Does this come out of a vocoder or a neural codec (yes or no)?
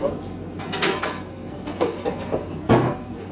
yes